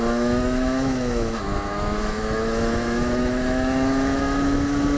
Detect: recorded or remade remade